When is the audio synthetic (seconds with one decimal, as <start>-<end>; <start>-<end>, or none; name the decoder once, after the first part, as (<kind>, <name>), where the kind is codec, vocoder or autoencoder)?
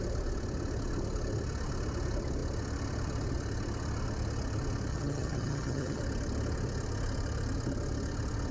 4.9-6.0 (vocoder, HiFi-GAN)